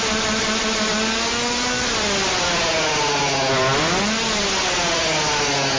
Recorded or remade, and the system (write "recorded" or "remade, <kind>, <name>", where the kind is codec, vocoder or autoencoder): recorded